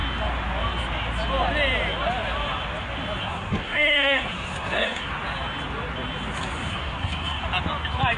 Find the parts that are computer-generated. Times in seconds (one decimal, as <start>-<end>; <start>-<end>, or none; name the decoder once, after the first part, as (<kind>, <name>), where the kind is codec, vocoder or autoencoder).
3.2-5.1 (codec, SNAC); 6.7-7.4